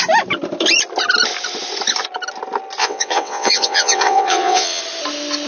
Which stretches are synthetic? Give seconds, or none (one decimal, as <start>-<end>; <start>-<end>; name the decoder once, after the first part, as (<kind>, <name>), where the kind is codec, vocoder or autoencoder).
2.8-4.8 (vocoder, WaveNeXt)